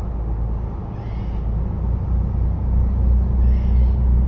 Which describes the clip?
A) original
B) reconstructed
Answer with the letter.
A